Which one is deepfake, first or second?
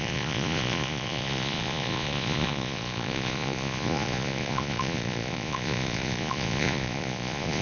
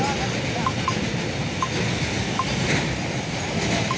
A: first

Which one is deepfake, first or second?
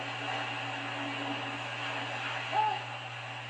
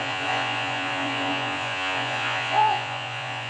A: second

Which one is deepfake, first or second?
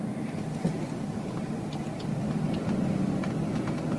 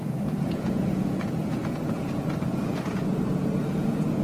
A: second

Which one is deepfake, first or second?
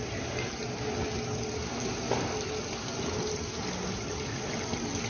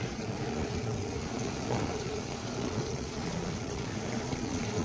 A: second